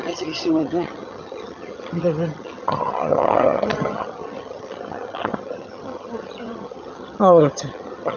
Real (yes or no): no